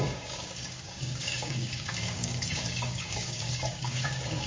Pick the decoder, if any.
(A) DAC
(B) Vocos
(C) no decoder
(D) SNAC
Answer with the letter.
A